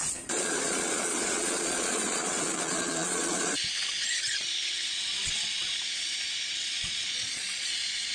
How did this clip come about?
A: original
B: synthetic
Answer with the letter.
B